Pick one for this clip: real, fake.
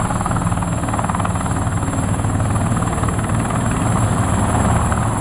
real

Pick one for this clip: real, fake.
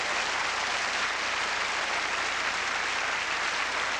real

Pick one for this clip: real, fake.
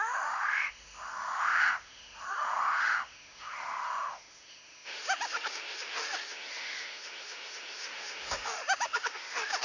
fake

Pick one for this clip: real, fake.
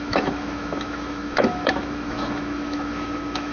fake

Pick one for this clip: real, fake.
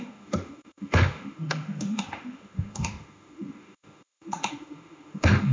fake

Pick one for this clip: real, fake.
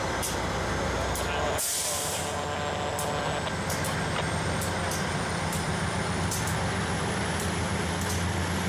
real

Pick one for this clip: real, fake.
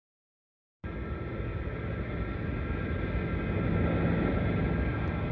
real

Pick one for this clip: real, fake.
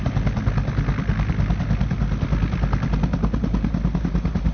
real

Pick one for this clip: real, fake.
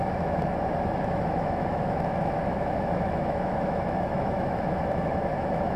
fake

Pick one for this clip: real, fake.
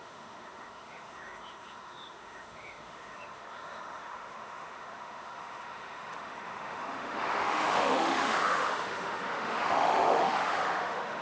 fake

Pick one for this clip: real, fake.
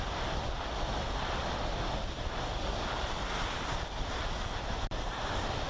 real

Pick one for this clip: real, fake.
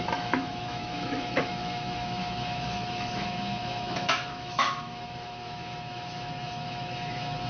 fake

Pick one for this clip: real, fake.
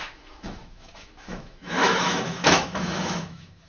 fake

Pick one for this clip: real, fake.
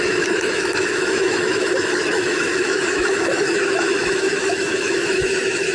fake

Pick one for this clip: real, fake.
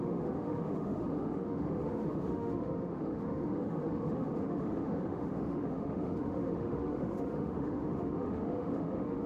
fake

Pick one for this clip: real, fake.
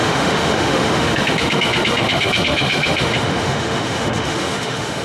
fake